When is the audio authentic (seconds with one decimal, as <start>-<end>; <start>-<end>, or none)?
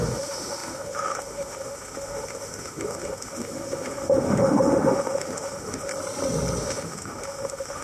5.9-6.6